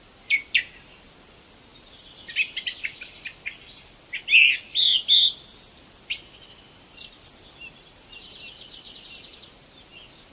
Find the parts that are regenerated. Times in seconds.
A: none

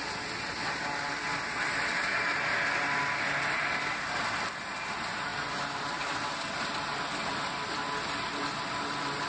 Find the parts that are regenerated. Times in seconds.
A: none

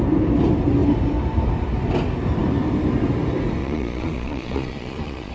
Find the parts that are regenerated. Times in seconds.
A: 3.6-5.3

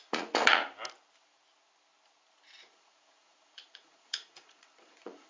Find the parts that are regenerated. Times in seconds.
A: 0.0-0.6; 2.6-5.3

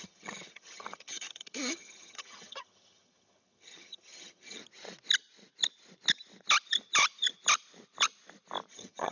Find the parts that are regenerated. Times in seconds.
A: 0.0-4.6; 8.7-9.1

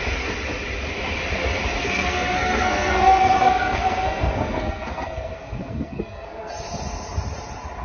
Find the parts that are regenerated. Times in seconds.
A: 1.8-6.5